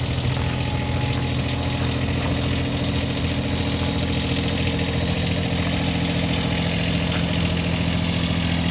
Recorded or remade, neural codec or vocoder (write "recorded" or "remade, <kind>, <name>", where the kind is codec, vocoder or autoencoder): recorded